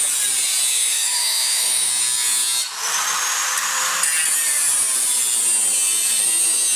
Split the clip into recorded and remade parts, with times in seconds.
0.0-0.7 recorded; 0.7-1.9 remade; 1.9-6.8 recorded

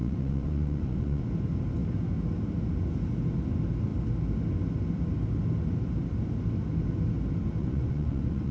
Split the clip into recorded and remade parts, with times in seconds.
0.0-1.2 remade; 1.2-7.6 recorded; 7.6-8.5 remade

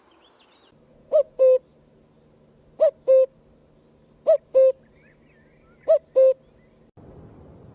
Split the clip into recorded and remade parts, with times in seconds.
0.0-0.9 recorded; 0.9-1.4 remade; 1.4-7.7 recorded

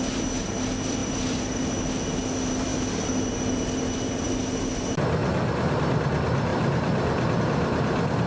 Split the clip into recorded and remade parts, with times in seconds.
0.0-1.0 recorded; 1.0-1.8 remade; 1.8-2.7 recorded; 2.7-4.8 remade; 4.8-5.2 recorded; 5.2-6.0 remade; 6.0-6.5 recorded; 6.5-7.4 remade; 7.4-8.3 recorded

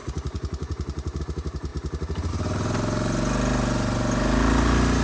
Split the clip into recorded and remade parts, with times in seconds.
0.0-1.2 remade; 1.2-5.0 recorded

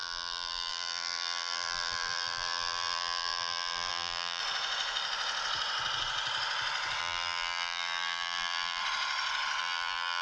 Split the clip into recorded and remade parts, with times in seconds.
0.0-4.4 remade; 4.4-7.0 recorded; 7.0-8.8 remade; 8.8-9.6 recorded; 9.6-10.2 remade